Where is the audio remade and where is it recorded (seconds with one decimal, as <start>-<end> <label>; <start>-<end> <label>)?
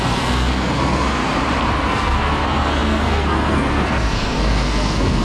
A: 0.0-1.2 remade; 1.2-1.8 recorded; 1.8-5.2 remade